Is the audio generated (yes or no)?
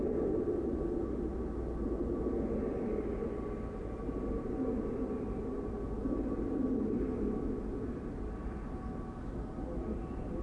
no